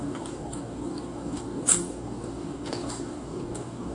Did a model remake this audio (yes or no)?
yes